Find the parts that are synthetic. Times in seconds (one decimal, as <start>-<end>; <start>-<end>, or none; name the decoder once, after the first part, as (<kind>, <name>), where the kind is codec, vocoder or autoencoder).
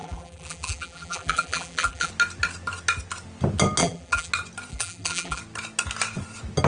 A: 0.0-2.1 (vocoder, BigVGAN v2); 3.8-4.3; 4.7-5.4